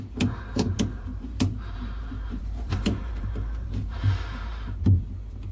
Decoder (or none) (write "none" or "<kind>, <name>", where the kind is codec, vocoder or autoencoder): vocoder, BigVGAN v2